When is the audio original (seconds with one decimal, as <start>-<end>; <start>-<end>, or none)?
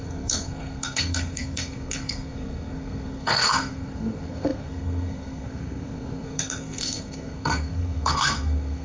none